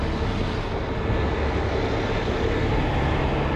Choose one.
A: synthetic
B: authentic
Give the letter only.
B